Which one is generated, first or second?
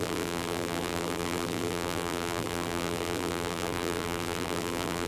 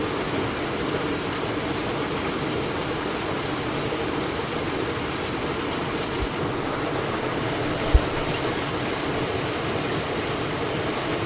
first